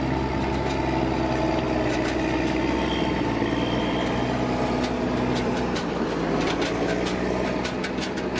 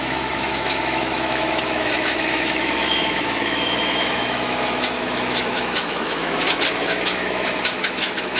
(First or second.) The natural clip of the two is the first